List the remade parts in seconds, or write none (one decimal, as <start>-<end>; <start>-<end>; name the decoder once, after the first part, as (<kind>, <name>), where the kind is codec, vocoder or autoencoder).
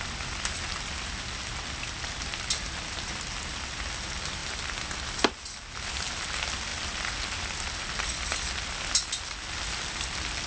none